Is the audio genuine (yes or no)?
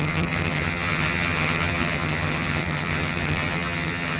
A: no